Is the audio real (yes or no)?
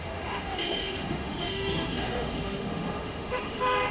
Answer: no